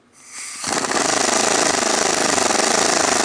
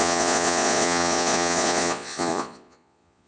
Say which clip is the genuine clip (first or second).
first